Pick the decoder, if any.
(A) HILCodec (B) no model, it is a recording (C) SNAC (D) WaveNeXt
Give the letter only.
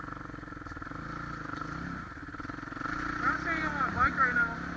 B